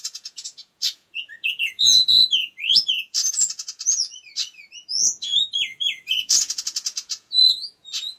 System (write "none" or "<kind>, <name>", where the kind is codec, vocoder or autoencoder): vocoder, Vocos